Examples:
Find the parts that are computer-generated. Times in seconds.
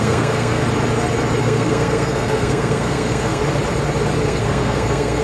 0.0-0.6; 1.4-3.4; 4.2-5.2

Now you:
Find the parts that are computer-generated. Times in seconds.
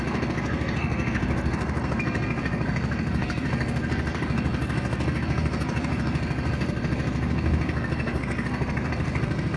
0.0-9.6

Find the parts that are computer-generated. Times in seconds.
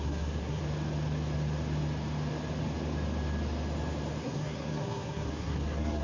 0.0-0.6; 4.2-6.0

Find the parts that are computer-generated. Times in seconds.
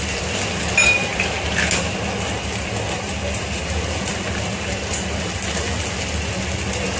none